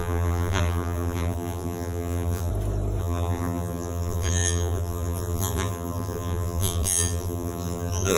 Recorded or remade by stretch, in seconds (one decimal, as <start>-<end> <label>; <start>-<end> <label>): 0.0-2.5 remade; 2.5-3.0 recorded; 3.0-8.2 remade